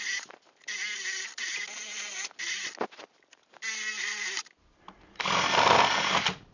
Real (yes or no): yes